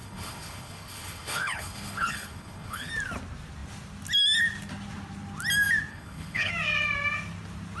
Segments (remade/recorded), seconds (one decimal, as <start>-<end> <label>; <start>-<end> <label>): 0.0-2.9 remade; 2.9-5.9 recorded; 5.9-6.5 remade; 6.5-7.8 recorded